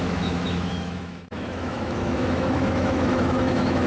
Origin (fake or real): fake